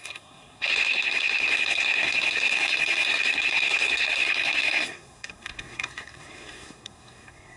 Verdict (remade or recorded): remade